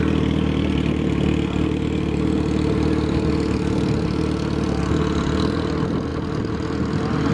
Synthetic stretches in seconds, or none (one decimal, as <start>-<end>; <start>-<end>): none